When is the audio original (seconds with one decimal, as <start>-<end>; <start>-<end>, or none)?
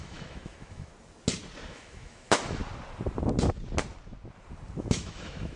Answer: 0.9-1.7; 2.6-4.8